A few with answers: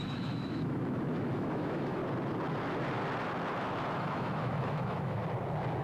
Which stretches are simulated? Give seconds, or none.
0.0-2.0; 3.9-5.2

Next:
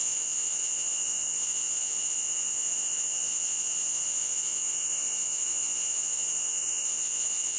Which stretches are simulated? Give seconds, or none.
0.0-7.6